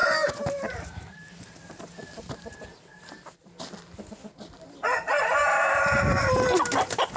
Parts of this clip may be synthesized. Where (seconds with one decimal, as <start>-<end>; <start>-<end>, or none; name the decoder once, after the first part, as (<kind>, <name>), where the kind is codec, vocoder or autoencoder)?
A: 0.0-1.6 (vocoder, BigVGAN v2); 5.4-6.5